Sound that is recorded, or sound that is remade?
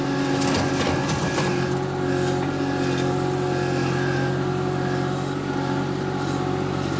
recorded